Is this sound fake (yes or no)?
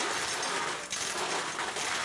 no